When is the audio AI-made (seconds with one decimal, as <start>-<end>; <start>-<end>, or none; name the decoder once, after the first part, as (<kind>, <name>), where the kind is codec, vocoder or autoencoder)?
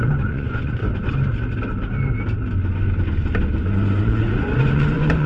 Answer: 0.0-0.8 (vocoder, Vocos); 4.0-5.3